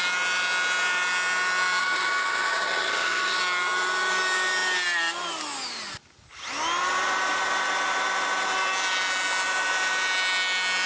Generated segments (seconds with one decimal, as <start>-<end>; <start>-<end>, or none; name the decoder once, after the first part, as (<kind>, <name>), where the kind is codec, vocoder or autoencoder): 1.8-3.4 (vocoder, HiFi-GAN)